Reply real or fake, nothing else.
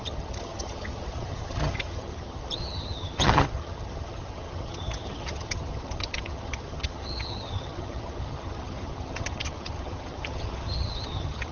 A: fake